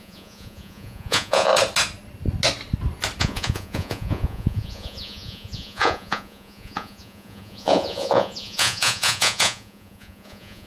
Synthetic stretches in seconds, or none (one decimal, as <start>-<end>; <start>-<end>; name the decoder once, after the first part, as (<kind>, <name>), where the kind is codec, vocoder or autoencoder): 0.0-1.5 (vocoder, Vocos); 3.2-10.7